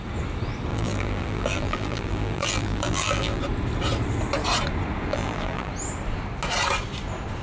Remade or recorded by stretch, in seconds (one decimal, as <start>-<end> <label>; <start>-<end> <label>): 0.0-0.7 recorded; 0.7-3.4 remade; 3.4-5.1 recorded; 5.1-5.7 remade; 5.7-7.4 recorded